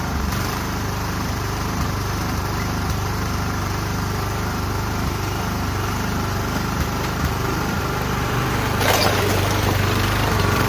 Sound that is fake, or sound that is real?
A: fake